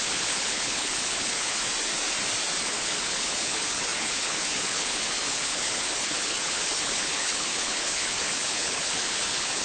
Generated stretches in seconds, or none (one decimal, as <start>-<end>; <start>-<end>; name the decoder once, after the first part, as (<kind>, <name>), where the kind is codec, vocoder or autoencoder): 0.0-1.6 (codec, HILCodec); 2.6-9.6